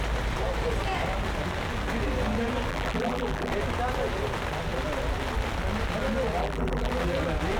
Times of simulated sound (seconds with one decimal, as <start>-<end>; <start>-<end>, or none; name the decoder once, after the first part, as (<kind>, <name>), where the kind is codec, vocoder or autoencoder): 2.7-3.5 (vocoder, BigVGAN v2); 6.4-6.9